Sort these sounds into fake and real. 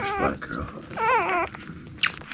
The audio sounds real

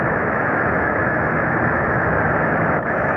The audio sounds fake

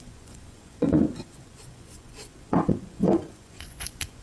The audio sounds fake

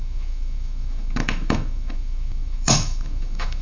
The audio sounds fake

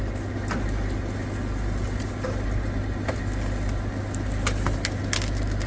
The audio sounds real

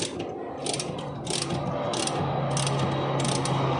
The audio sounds real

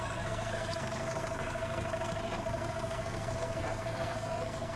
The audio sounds fake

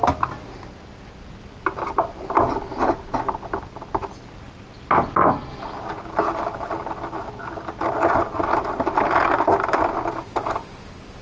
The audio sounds real